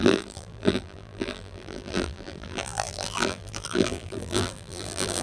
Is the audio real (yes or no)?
no